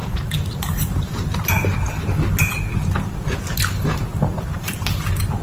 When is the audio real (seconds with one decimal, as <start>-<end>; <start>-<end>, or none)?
1.1-5.4